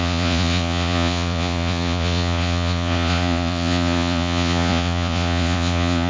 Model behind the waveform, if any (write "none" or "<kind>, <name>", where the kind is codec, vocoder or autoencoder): vocoder, Vocos